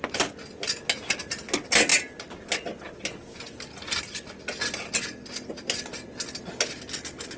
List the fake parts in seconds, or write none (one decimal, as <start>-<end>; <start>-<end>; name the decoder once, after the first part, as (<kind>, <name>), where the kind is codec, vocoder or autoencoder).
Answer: none

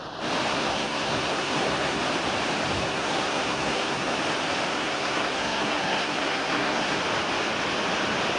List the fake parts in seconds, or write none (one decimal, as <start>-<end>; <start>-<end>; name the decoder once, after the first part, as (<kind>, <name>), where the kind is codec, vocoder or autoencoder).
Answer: 0.5-2.0 (codec, SNAC); 2.8-4.2; 4.7-7.0

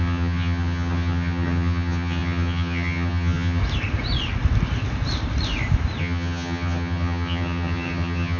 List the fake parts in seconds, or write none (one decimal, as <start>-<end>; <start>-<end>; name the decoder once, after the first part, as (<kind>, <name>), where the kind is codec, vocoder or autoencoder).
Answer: 0.0-3.6 (vocoder, HiFi-GAN); 6.0-8.4

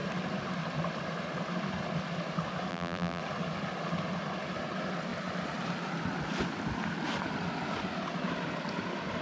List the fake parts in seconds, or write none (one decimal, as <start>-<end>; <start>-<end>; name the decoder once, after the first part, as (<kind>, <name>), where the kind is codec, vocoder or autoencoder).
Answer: 2.7-3.2 (vocoder, BigVGAN v2)

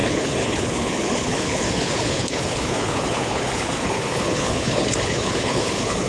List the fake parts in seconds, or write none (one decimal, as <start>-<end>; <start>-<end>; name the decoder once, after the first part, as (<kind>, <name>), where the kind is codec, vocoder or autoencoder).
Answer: 0.0-6.1 (codec, HILCodec)